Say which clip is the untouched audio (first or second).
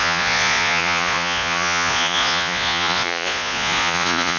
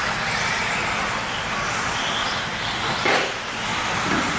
second